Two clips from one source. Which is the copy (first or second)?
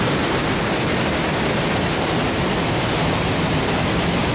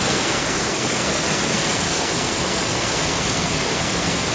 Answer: second